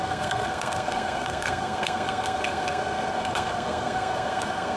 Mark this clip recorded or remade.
remade